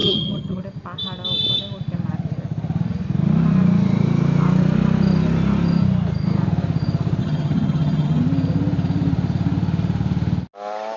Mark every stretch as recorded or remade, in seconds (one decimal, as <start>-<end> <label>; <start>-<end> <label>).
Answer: 0.0-0.6 remade; 0.6-7.2 recorded; 7.2-8.2 remade; 8.2-11.0 recorded